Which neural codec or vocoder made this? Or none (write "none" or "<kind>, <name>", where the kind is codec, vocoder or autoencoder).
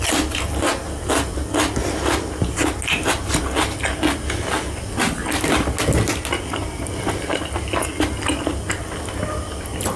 none